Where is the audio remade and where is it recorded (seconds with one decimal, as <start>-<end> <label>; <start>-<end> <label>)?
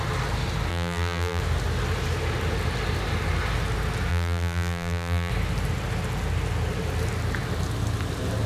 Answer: 0.0-0.7 recorded; 0.7-1.4 remade; 1.4-4.1 recorded; 4.1-5.3 remade; 5.3-8.5 recorded